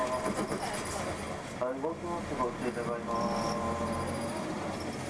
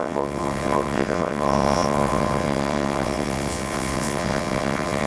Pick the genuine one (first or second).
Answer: first